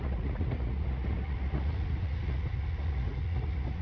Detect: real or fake fake